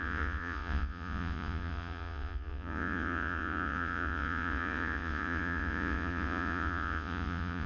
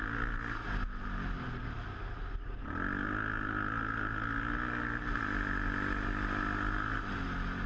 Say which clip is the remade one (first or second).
first